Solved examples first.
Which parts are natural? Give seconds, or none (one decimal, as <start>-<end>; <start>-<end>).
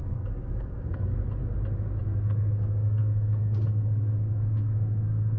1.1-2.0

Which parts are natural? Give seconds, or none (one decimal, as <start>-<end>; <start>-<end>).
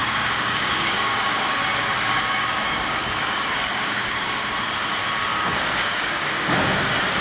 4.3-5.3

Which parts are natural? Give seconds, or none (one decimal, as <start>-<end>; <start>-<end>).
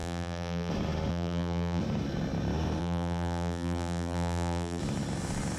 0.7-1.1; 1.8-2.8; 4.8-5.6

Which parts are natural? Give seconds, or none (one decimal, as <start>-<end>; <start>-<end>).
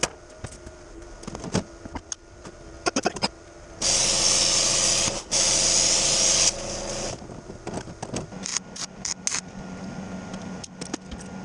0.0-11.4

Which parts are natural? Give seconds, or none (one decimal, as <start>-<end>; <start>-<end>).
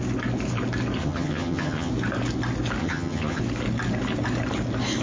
0.0-1.0; 1.9-2.8; 3.4-5.0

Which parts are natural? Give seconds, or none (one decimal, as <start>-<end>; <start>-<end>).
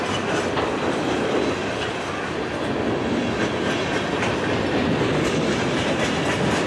0.0-6.7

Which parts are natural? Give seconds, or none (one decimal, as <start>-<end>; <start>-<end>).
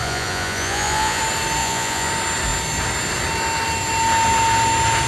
1.2-1.6; 2.1-5.1